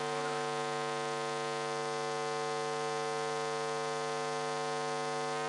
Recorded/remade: recorded